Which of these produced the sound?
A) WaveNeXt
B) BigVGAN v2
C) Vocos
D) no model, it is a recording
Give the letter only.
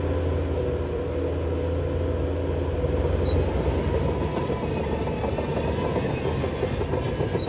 D